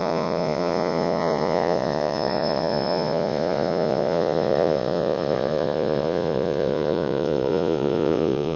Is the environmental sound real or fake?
fake